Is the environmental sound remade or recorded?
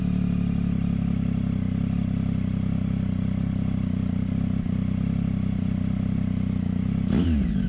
recorded